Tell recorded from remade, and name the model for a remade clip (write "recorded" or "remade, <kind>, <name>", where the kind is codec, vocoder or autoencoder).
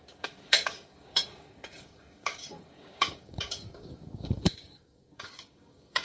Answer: remade, codec, DAC